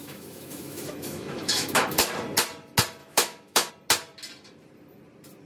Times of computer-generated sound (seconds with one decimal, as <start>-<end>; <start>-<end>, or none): 0.0-2.1; 3.0-3.7